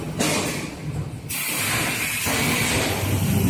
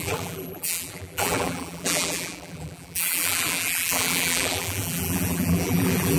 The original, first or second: first